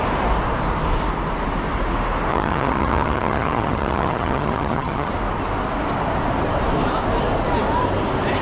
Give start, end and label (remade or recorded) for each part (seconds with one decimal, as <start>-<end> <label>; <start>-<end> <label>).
0.0-2.3 recorded; 2.3-5.1 remade; 5.1-8.4 recorded